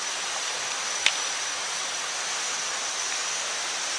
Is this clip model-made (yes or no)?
no